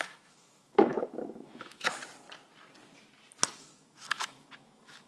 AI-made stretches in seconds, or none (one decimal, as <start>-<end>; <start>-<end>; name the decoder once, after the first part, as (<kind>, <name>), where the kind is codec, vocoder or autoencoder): 0.0-2.0 (autoencoder, DAC-VAE); 3.6-5.1